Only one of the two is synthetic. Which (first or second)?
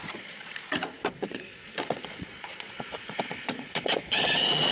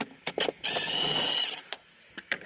first